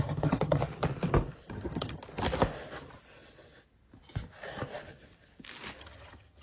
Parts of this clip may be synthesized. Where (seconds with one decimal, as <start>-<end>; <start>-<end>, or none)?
0.0-0.6; 1.5-2.0; 5.8-6.4